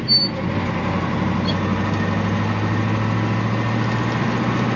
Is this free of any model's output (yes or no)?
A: yes